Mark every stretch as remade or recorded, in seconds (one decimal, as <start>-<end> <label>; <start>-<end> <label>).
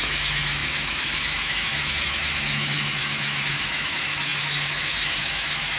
0.0-5.8 remade